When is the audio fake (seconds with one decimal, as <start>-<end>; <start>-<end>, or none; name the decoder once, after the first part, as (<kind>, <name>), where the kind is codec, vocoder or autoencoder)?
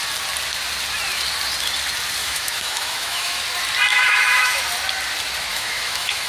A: 2.2-3.4 (autoencoder, DAC-VAE); 3.9-4.6; 5.5-6.3